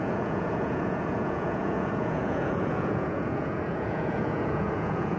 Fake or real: fake